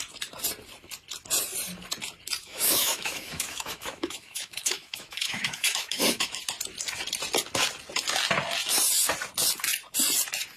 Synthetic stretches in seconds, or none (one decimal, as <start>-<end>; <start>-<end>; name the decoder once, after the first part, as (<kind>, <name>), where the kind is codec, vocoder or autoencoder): 2.4-6.4 (autoencoder, DAC-VAE)